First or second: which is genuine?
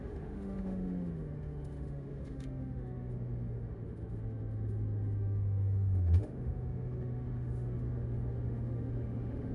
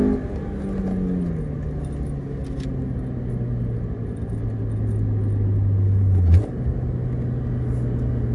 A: second